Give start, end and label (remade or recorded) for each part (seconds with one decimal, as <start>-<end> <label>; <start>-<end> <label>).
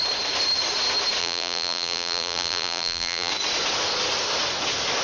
0.0-1.2 recorded; 1.2-3.3 remade; 3.3-5.0 recorded